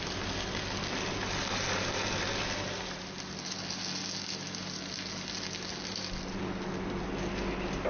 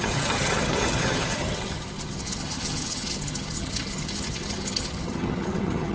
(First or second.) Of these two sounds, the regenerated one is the second